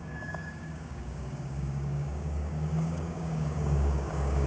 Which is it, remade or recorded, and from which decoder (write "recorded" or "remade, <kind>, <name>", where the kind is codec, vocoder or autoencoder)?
remade, codec, DAC